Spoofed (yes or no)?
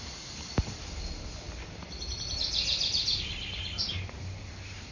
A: no